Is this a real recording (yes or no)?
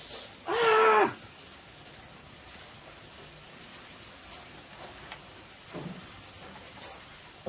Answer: yes